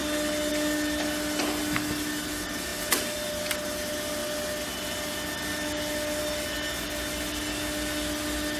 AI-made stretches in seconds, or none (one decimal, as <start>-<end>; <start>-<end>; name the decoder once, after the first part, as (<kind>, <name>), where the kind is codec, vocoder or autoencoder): none